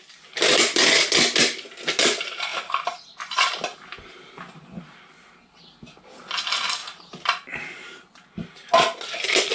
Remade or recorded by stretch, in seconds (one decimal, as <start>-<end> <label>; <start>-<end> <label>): 0.0-6.8 recorded; 6.8-8.4 remade; 8.4-9.5 recorded